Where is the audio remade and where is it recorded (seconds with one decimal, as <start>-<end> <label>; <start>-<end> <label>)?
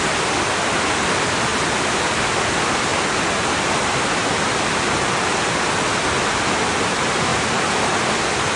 0.0-8.6 recorded